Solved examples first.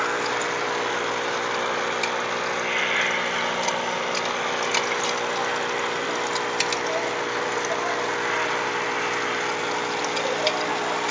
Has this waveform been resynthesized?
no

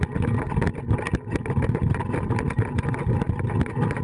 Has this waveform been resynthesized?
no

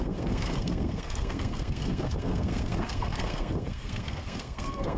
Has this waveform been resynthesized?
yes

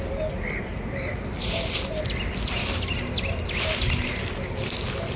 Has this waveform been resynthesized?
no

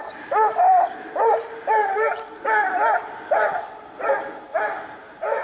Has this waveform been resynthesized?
no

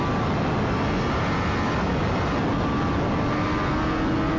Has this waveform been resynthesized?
no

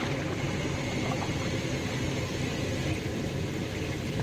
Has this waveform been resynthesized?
no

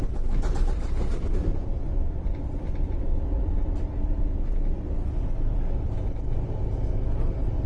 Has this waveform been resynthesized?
yes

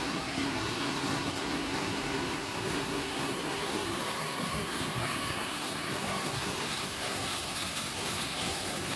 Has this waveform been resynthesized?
yes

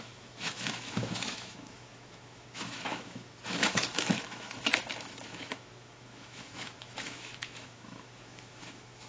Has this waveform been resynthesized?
yes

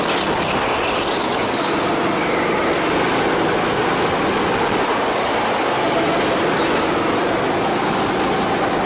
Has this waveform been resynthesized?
no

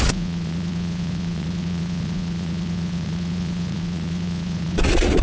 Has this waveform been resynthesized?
yes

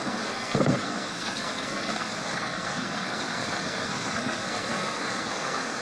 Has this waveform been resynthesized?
yes